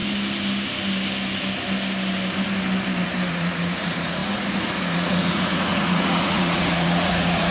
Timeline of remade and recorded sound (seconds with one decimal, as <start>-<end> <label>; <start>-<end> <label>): 0.0-3.3 recorded; 3.3-7.5 remade